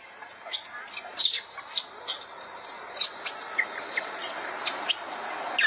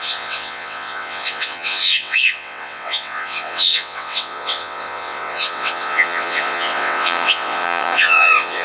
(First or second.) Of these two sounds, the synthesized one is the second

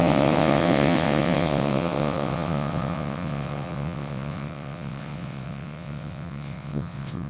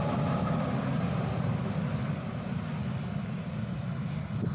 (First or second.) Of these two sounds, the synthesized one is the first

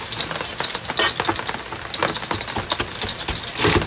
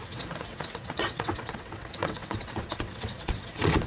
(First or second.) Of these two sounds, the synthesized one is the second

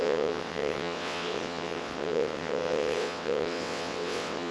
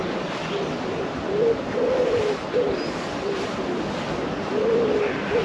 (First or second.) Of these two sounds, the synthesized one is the first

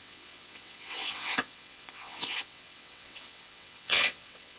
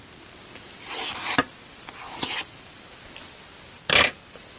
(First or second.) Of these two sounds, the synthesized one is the first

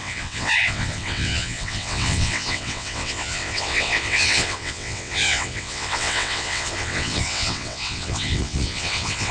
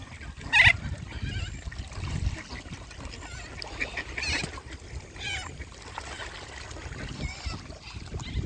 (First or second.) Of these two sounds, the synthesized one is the first